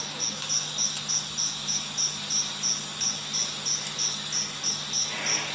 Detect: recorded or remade recorded